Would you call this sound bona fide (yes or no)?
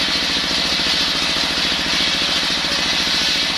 yes